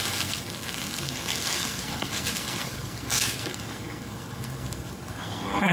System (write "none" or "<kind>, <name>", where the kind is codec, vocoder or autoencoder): codec, SNAC